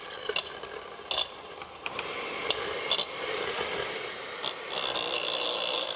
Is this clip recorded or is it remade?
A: recorded